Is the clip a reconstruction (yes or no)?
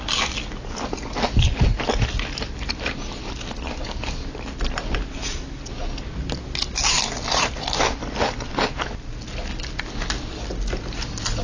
no